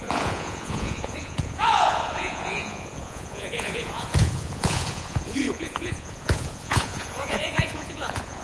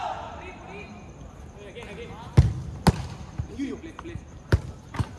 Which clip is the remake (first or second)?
first